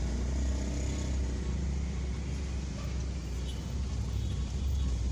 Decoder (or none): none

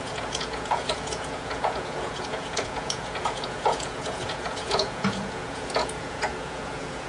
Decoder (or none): vocoder, Vocos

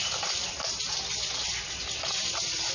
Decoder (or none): vocoder, BigVGAN v2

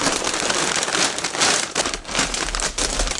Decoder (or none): vocoder, BigVGAN v2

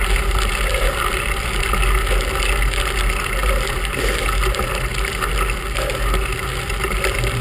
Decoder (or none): none